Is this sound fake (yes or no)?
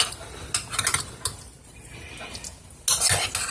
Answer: no